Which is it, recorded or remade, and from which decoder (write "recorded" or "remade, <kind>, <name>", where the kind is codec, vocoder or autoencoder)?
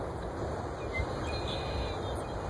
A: recorded